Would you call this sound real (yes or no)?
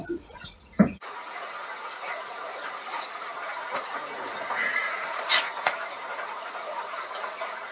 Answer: no